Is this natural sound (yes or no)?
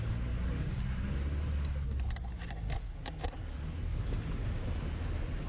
yes